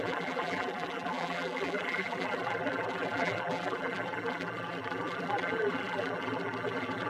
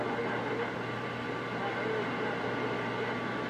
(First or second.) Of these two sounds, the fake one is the first